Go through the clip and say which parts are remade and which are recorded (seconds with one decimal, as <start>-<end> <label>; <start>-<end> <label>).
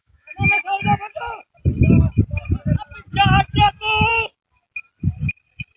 0.0-0.6 remade; 0.6-5.8 recorded